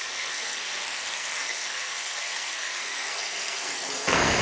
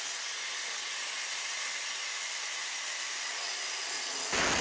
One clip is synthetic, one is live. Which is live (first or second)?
second